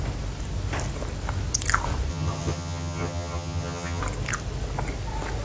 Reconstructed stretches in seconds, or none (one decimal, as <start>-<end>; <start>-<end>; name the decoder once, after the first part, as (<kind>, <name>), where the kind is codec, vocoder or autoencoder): 2.1-4.0 (vocoder, HiFi-GAN)